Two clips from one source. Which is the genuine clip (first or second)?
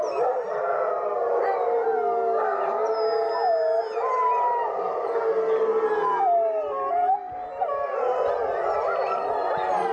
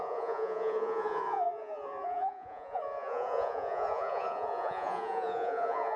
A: first